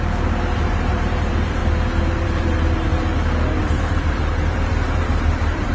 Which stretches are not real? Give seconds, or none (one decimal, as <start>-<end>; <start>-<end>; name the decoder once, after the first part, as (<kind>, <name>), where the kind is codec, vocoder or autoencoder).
0.0-2.9 (vocoder, BigVGAN v2); 3.6-5.7